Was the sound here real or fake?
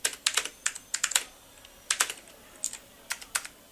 real